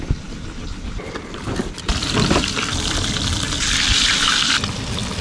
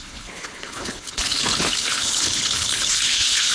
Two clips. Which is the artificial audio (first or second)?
second